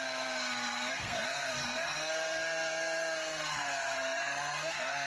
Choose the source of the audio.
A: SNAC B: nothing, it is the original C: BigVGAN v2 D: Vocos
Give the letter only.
A